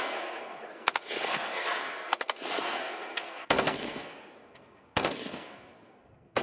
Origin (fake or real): fake